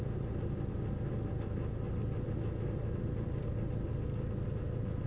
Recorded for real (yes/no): yes